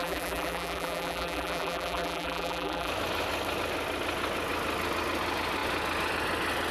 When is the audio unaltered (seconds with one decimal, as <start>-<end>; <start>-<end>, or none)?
2.9-6.7